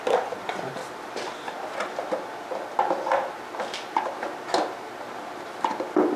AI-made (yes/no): no